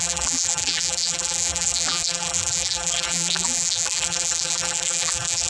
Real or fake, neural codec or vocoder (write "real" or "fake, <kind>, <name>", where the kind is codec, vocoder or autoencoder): fake, vocoder, BigVGAN v2